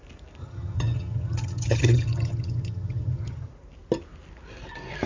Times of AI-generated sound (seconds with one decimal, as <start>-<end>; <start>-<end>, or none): 0.4-3.5